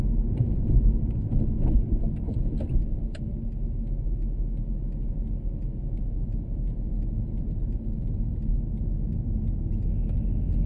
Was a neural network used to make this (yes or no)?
no